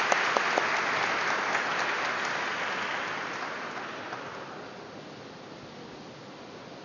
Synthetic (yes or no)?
no